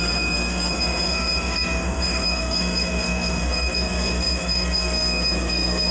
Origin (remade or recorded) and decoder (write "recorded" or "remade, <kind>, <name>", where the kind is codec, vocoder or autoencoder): remade, codec, SNAC